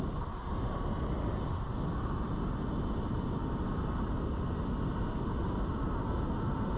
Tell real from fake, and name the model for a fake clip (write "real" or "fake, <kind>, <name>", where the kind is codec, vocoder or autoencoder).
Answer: real